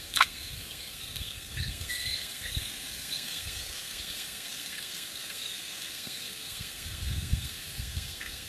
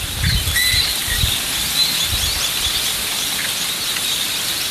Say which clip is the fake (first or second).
first